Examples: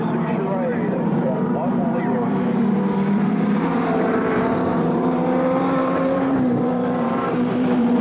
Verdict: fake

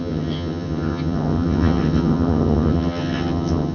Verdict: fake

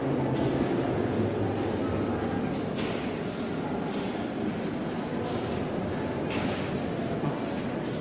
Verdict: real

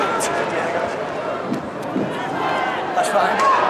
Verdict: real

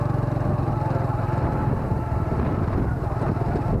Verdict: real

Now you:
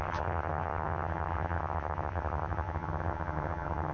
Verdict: fake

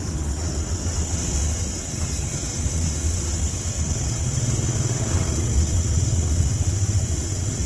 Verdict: fake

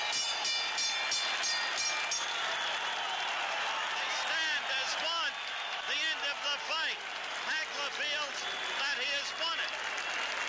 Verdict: real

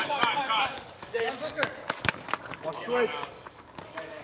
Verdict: fake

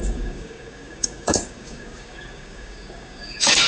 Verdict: fake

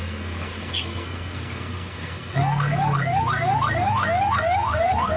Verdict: fake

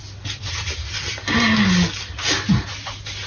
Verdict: real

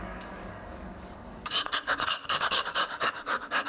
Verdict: fake